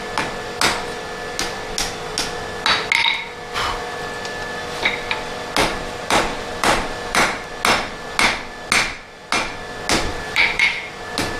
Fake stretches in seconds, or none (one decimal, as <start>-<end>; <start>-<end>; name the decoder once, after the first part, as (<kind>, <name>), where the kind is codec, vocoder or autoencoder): 5.6-7.5 (vocoder, BigVGAN v2); 10.1-10.9